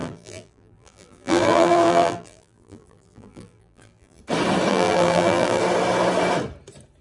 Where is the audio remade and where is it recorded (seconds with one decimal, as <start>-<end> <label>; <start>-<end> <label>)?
0.0-4.2 remade; 4.2-4.7 recorded; 4.7-5.6 remade; 5.6-7.0 recorded